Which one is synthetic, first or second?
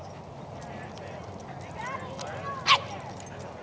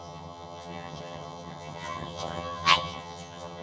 second